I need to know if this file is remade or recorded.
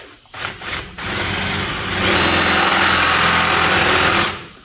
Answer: recorded